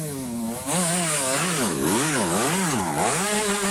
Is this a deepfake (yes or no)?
yes